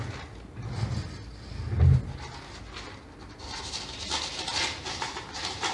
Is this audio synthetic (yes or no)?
no